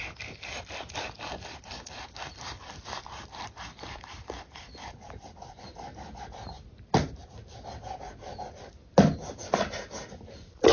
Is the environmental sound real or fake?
real